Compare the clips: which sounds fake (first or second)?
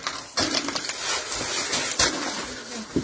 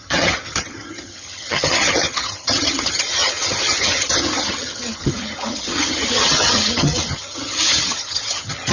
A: second